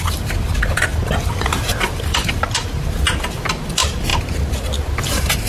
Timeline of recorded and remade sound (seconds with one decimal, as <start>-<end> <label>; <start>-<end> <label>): 0.0-0.9 recorded; 0.9-2.9 remade; 2.9-5.5 recorded